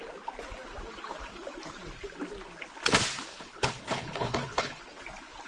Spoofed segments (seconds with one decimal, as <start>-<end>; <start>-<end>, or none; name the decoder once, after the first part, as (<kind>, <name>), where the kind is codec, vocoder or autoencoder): 3.3-4.8 (codec, HILCodec)